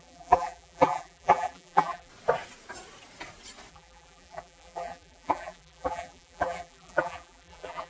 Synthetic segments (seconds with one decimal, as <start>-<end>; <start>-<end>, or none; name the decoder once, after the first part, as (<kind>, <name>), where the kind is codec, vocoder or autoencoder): 0.0-2.1 (vocoder, BigVGAN v2); 3.7-7.9